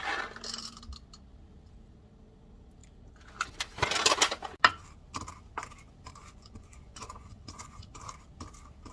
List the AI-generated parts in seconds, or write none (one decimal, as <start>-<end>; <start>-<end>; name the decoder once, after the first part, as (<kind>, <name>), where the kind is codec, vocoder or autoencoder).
6.2-8.0 (vocoder, Vocos)